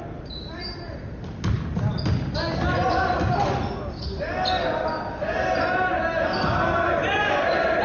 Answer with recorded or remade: recorded